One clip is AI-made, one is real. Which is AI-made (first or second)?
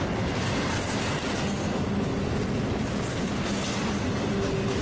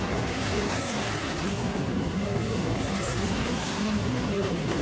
second